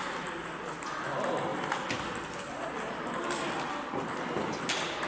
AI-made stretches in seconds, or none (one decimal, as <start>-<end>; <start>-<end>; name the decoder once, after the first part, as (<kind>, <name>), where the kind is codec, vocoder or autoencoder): none